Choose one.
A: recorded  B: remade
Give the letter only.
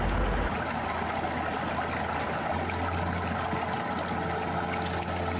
A